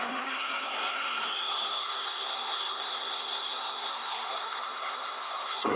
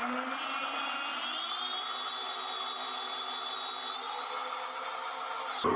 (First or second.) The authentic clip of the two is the second